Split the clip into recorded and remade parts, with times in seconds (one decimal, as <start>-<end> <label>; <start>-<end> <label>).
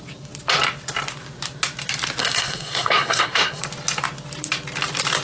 0.0-2.2 recorded; 2.2-3.6 remade; 3.6-5.2 recorded